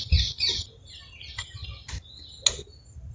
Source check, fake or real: real